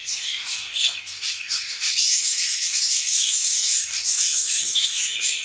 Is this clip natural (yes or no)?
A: no